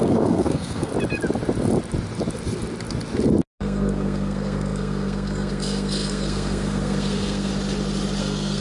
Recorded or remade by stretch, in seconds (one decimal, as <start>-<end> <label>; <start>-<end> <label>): 0.0-0.9 remade; 0.9-3.6 recorded; 3.6-7.5 remade; 7.5-8.2 recorded; 8.2-8.6 remade